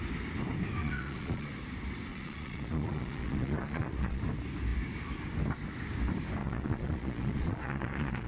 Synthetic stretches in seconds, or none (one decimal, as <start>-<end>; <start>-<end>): 0.8-1.5; 2.1-4.2; 6.4-8.3